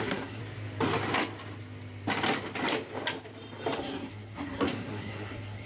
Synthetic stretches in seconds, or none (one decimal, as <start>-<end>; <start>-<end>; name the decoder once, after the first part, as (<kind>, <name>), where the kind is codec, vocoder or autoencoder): 0.0-0.4 (codec, SNAC); 3.8-5.7